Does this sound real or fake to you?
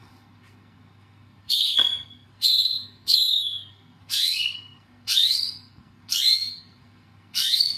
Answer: fake